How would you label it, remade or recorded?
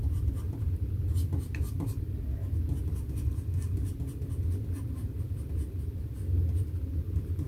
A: recorded